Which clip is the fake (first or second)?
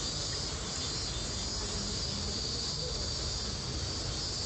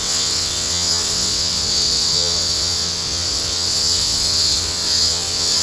second